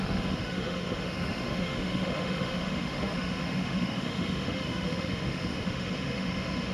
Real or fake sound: fake